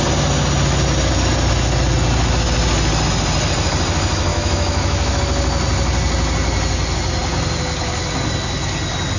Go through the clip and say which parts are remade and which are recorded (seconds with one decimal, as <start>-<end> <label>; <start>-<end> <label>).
0.0-4.3 recorded; 4.3-5.2 remade; 5.2-9.2 recorded